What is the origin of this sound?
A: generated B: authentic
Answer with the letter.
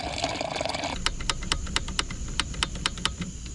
A